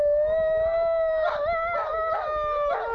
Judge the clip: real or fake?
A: real